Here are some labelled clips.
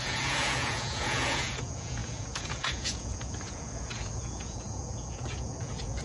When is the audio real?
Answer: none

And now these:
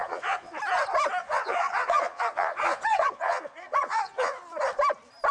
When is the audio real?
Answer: 0.6-1.2; 4.4-5.3